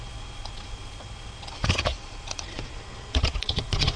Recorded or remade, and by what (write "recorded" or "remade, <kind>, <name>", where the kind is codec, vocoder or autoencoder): remade, vocoder, Vocos